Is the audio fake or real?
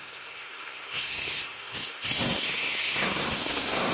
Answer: fake